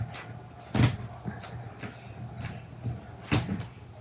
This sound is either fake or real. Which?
real